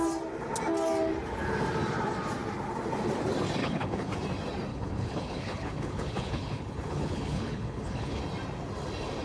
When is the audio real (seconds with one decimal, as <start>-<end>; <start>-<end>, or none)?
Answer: 0.0-3.6; 4.1-4.7; 8.2-9.2